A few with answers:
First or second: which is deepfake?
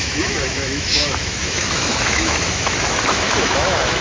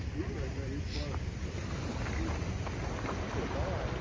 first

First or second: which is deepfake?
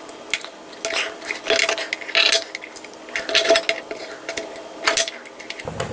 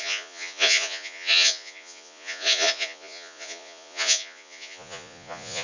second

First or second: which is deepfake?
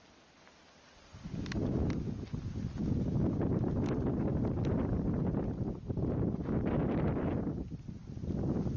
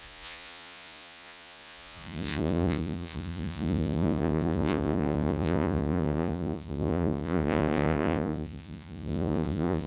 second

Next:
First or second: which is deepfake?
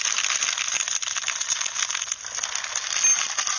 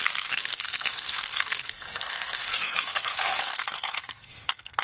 second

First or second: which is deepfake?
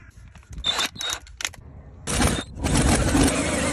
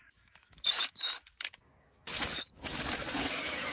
second